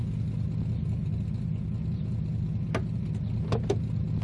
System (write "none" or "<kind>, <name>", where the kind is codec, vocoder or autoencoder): none